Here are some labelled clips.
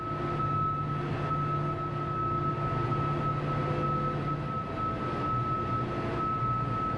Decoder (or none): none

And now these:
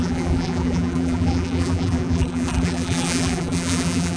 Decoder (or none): vocoder, BigVGAN v2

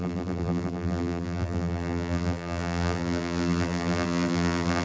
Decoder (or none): vocoder, BigVGAN v2